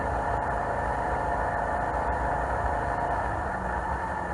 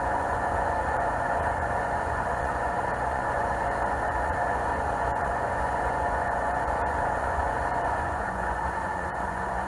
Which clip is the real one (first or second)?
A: first